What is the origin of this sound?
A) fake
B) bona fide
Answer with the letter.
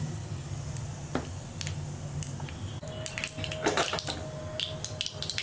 B